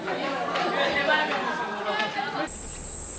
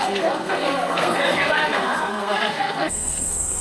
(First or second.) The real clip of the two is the first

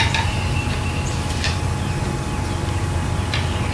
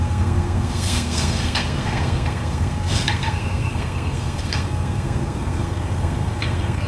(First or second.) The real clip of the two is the first